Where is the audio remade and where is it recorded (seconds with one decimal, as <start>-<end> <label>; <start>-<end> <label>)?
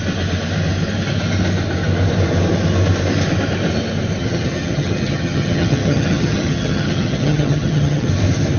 0.0-4.2 recorded; 4.2-8.1 remade; 8.1-8.6 recorded